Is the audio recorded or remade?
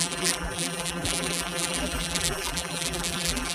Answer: remade